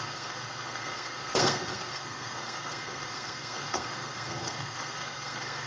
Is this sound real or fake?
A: fake